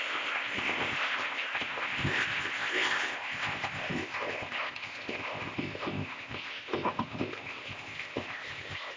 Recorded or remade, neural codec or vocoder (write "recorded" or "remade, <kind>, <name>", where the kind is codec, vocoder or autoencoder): remade, codec, ZipCodec